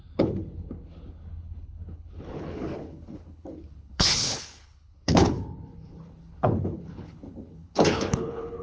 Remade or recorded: remade